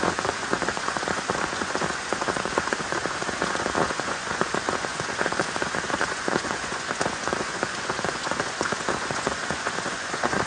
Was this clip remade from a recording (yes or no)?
yes